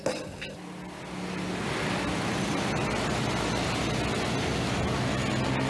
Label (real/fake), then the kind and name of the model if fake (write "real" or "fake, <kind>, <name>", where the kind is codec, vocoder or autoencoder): real